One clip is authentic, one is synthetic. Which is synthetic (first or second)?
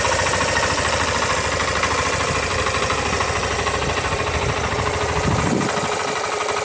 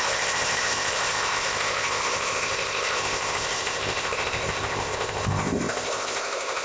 second